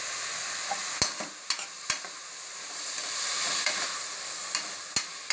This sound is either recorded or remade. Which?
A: recorded